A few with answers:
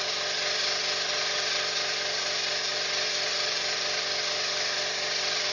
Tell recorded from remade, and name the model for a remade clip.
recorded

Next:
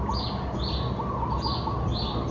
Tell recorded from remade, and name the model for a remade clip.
recorded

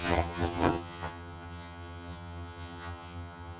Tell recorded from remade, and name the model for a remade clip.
remade, vocoder, HiFi-GAN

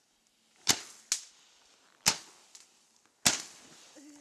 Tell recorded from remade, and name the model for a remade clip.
recorded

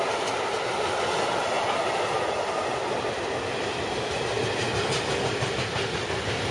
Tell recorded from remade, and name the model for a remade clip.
recorded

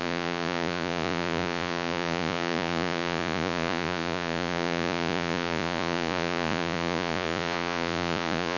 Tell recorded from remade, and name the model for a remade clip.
remade, vocoder, Vocos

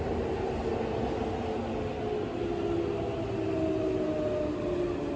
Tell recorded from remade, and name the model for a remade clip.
recorded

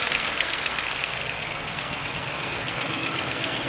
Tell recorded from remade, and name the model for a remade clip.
remade, codec, SNAC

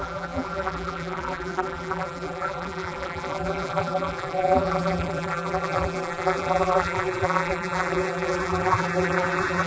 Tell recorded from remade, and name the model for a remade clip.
remade, vocoder, BigVGAN v2